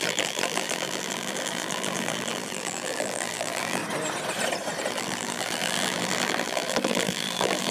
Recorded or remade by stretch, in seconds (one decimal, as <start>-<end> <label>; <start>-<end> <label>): 0.0-3.8 remade; 3.8-4.9 recorded; 4.9-7.7 remade